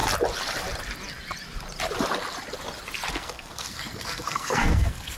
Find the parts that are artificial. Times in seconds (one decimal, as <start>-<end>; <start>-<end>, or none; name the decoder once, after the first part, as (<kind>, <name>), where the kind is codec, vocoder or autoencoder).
3.1-5.2 (codec, SNAC)